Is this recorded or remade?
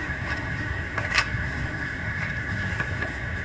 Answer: remade